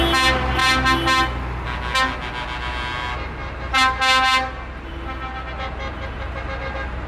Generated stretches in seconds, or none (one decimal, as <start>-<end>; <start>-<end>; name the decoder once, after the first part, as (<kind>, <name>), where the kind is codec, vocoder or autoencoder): none